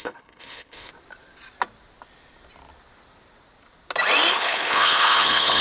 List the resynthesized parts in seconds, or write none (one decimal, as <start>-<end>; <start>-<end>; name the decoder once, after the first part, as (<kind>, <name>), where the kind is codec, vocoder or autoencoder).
0.0-0.9 (codec, HILCodec); 4.3-5.6